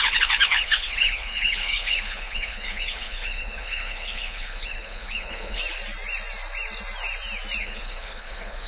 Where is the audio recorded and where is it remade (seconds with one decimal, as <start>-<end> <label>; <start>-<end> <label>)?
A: 0.0-5.6 remade; 5.6-7.6 recorded; 7.6-8.7 remade